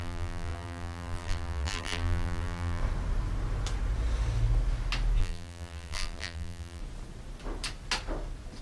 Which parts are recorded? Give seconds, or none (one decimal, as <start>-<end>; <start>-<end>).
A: 2.8-5.2; 6.8-8.6